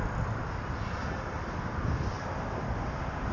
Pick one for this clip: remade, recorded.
recorded